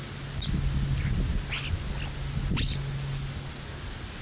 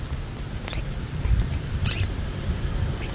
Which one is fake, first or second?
second